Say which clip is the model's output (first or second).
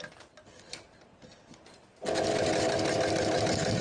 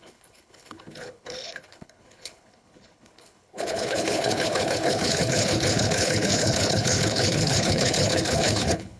second